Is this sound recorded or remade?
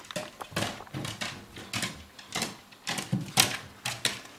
recorded